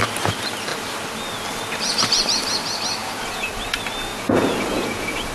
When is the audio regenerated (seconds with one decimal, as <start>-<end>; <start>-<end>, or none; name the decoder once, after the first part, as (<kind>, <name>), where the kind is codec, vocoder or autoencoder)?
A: 3.0-3.5 (vocoder, Vocos); 4.1-5.3